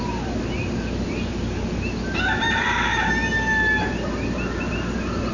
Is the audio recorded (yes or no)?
yes